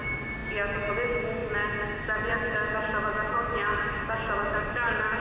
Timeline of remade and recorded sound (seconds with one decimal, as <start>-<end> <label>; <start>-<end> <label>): 0.0-5.2 recorded